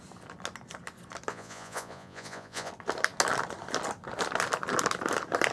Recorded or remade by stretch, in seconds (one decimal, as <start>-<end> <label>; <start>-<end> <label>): 0.0-1.3 recorded; 1.3-2.7 remade; 2.7-5.5 recorded